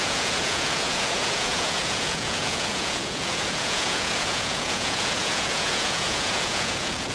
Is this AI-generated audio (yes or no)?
yes